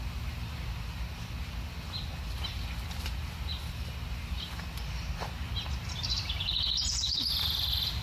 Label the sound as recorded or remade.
recorded